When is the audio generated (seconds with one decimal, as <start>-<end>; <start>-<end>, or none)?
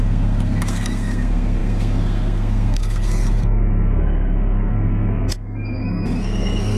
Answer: 0.0-6.8